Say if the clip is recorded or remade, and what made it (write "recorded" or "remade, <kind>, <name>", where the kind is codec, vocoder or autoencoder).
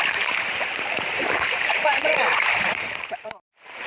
remade, vocoder, BigVGAN v2